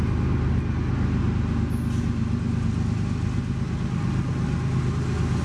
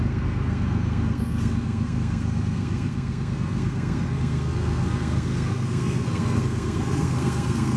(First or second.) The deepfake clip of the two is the second